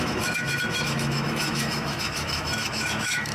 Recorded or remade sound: remade